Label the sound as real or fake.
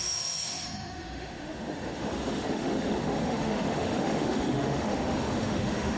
fake